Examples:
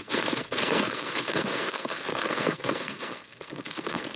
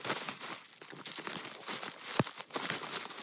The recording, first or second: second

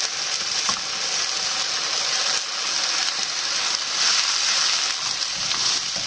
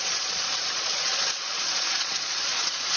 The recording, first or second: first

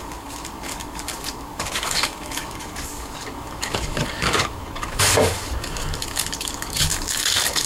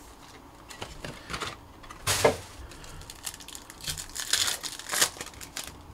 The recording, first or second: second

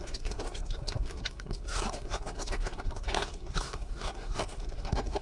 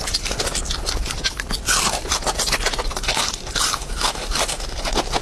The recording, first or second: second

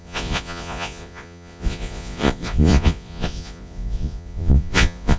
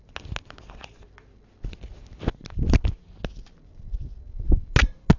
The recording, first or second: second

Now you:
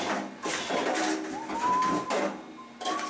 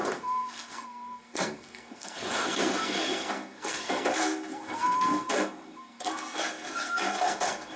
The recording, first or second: first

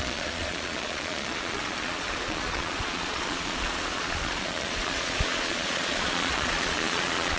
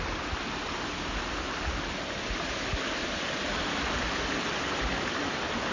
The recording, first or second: second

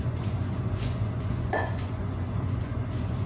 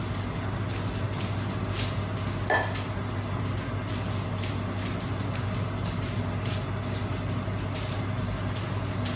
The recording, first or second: second